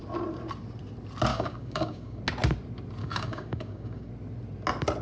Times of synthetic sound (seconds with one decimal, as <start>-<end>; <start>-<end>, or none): 1.3-2.2; 3.0-4.1